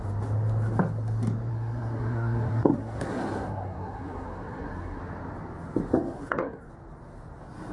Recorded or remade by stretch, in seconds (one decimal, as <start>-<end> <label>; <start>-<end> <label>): 0.0-1.5 recorded; 1.5-5.0 remade; 5.0-5.9 recorded; 5.9-6.7 remade; 6.7-7.7 recorded